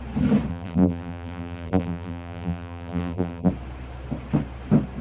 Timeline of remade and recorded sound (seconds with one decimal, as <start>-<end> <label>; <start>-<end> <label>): 0.0-0.5 recorded; 0.5-3.5 remade; 3.5-5.0 recorded